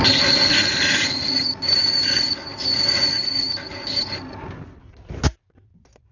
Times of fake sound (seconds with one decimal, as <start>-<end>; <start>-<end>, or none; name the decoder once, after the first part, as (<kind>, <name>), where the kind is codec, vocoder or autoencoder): none